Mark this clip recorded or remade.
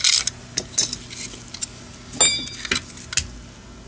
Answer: recorded